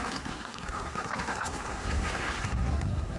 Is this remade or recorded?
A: remade